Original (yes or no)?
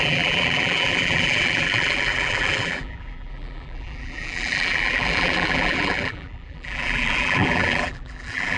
no